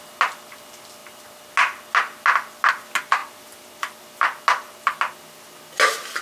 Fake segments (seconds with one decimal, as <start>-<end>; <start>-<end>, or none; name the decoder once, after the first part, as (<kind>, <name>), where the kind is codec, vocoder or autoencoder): none

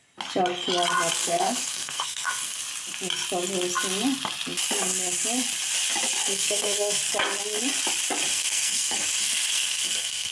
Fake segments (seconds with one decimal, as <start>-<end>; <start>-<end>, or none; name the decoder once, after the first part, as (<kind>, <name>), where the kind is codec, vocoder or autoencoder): 1.2-2.6 (codec, SNAC); 6.2-7.0; 8.3-10.3

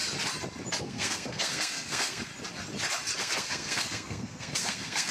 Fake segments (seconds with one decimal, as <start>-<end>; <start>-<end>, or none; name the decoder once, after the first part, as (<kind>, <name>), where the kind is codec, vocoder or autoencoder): 0.8-2.3 (codec, SNAC); 3.2-5.1

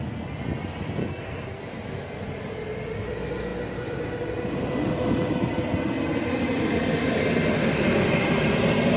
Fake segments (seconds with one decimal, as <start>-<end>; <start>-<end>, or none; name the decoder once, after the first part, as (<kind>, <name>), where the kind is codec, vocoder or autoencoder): 1.0-1.6 (codec, SNAC)

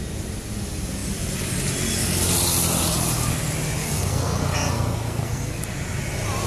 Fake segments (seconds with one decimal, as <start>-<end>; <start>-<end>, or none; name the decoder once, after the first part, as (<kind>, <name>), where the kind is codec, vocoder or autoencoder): 3.8-5.6 (codec, SNAC)

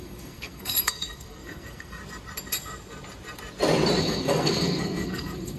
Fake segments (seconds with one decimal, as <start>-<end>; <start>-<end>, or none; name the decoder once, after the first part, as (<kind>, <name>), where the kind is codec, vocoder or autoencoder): 0.0-2.0 (codec, SNAC); 4.0-5.6

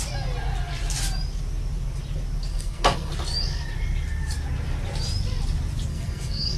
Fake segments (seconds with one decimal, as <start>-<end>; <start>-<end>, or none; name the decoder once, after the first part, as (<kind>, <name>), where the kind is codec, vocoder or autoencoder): 2.5-3.1 (codec, SNAC); 5.9-6.6

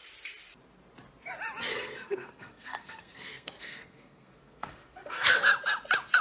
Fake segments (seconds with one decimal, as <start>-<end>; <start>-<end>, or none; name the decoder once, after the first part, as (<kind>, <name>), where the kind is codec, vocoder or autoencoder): 1.7-5.4 (codec, SNAC)